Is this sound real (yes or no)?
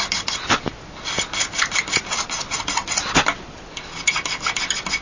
yes